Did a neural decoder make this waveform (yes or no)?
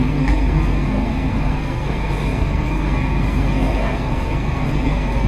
yes